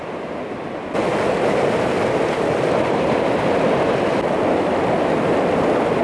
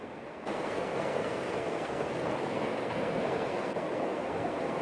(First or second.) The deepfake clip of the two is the second